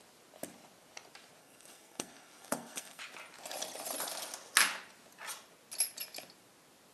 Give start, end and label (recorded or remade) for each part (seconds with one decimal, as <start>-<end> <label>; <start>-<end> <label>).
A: 0.0-1.4 recorded; 1.4-3.0 remade; 3.0-6.9 recorded

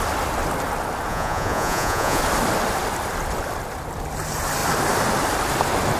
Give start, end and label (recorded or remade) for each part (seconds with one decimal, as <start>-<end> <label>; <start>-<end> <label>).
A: 0.0-1.1 recorded; 1.1-2.2 remade; 2.2-6.0 recorded

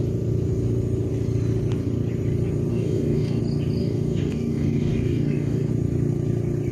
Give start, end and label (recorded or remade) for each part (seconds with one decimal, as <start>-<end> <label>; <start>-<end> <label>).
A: 0.0-2.7 recorded; 2.7-3.4 remade; 3.4-3.8 recorded; 3.8-5.7 remade; 5.7-6.7 recorded

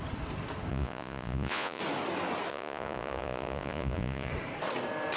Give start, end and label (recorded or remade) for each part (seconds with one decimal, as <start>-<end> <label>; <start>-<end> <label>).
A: 0.0-0.7 recorded; 0.7-1.8 remade; 1.8-2.5 recorded; 2.5-4.3 remade; 4.3-5.2 recorded

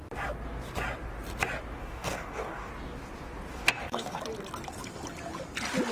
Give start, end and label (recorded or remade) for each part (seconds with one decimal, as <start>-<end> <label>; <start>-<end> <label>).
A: 0.0-1.8 recorded; 1.8-2.7 remade; 2.7-3.5 recorded; 3.5-4.2 remade; 4.2-5.9 recorded

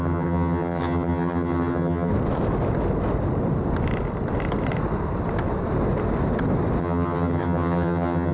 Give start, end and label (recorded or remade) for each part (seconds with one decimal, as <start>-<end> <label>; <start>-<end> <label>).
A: 0.0-2.1 remade; 2.1-6.8 recorded; 6.8-8.3 remade

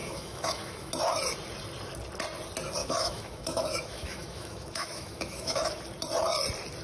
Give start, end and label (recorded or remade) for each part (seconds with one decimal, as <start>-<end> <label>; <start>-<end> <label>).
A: 0.0-0.9 remade; 0.9-2.8 recorded; 2.8-5.8 remade; 5.8-6.8 recorded

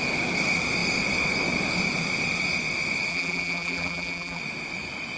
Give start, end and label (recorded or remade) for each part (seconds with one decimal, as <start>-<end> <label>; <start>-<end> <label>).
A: 0.0-3.1 recorded; 3.1-4.4 remade; 4.4-5.2 recorded